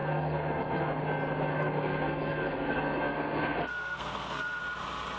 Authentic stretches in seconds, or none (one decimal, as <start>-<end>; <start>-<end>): 1.0-1.5; 4.6-5.2